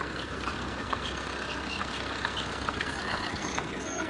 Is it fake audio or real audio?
fake